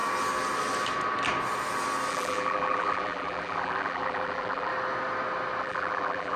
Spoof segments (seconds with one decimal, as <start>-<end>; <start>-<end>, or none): 2.1-4.7; 5.6-6.4